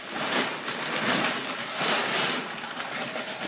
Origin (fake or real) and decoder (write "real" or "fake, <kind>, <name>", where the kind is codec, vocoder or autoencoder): real